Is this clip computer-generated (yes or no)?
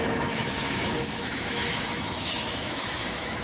yes